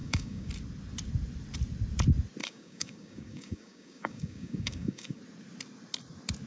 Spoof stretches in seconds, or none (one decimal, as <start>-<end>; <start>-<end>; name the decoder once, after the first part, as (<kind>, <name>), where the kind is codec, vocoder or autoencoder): 0.0-0.5 (codec, DAC); 2.4-5.2